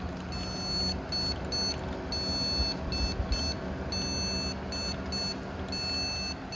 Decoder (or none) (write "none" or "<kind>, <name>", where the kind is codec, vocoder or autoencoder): none